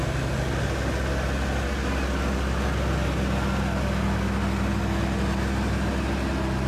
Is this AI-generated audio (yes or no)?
no